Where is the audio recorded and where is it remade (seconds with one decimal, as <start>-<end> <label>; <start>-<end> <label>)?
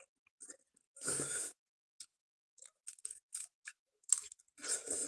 0.0-0.9 recorded; 0.9-1.7 remade; 1.7-2.2 recorded; 2.2-4.4 remade; 4.4-5.1 recorded